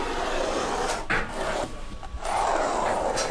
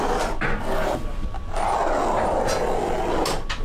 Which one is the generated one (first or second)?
first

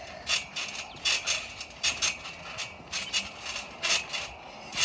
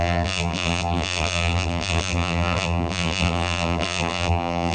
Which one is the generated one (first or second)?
second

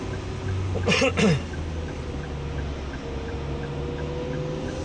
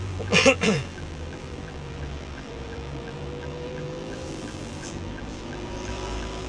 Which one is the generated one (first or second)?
second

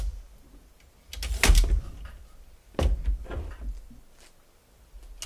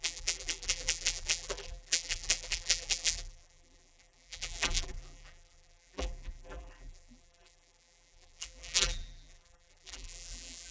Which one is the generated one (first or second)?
second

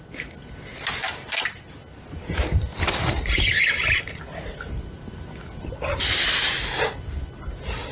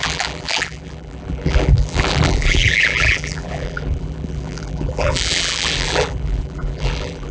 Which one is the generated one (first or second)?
second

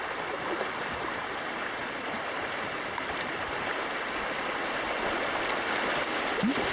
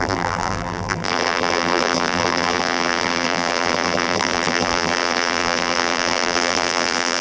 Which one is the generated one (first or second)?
second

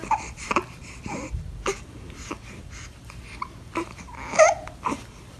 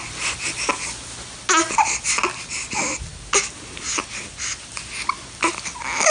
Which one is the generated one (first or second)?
first